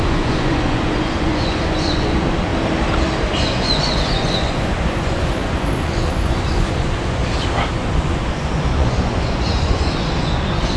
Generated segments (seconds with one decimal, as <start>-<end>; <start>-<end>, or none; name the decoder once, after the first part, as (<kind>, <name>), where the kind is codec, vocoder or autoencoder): 0.0-2.5 (vocoder, Vocos); 3.2-7.2; 7.7-10.8